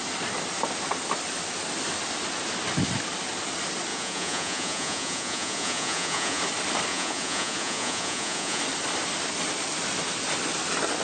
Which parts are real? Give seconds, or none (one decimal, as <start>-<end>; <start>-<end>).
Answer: 0.0-3.9; 6.4-6.9; 8.6-11.0